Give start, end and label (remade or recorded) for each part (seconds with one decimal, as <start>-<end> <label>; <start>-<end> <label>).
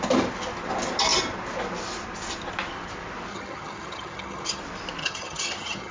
0.0-3.3 recorded; 3.3-4.6 remade; 4.6-5.0 recorded; 5.0-5.9 remade